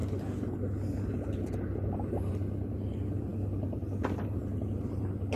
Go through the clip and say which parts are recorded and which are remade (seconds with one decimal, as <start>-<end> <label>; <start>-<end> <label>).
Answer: 0.0-5.4 recorded